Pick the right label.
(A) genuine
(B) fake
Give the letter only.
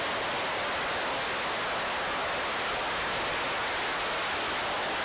A